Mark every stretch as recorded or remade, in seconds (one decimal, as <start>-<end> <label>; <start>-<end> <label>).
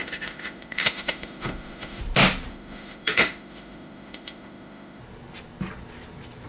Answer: 0.0-2.0 remade; 2.0-2.5 recorded; 2.5-5.0 remade; 5.0-6.5 recorded